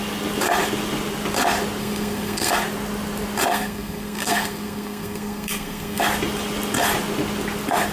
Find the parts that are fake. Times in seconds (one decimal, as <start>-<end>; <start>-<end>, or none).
1.8-2.5; 3.5-6.0